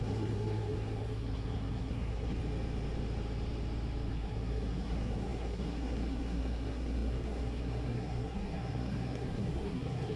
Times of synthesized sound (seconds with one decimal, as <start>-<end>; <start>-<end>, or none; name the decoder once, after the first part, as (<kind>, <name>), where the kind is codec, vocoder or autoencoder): 0.0-2.4 (codec, SNAC); 4.1-10.2